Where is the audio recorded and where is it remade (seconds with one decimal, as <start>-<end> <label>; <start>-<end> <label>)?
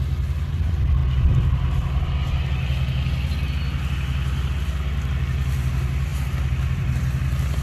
0.0-6.1 recorded; 6.1-7.6 remade